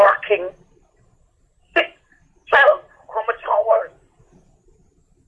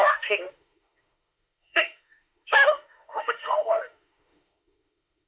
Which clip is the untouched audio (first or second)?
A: first